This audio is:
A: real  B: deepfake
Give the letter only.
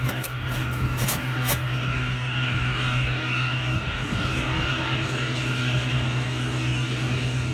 B